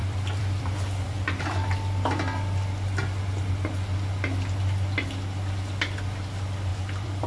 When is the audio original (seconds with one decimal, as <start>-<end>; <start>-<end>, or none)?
1.4-6.7